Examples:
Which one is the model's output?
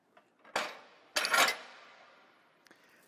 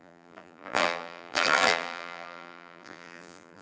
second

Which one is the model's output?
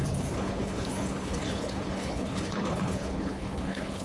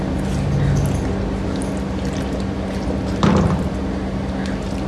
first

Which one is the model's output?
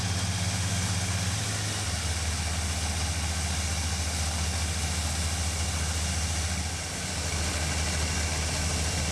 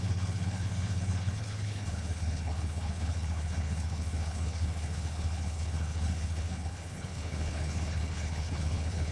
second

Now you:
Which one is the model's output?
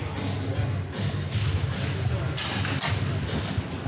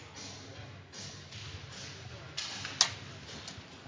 first